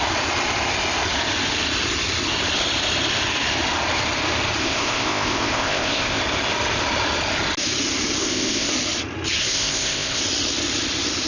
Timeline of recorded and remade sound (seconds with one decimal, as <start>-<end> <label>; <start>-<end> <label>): 0.0-4.6 recorded; 4.6-6.2 remade; 6.2-8.2 recorded; 8.2-8.7 remade; 8.7-9.4 recorded; 9.4-10.2 remade; 10.2-11.3 recorded